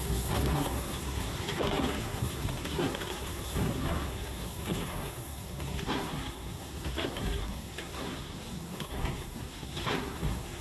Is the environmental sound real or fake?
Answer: fake